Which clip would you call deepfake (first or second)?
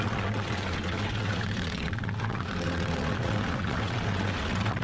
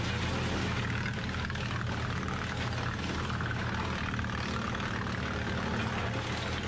first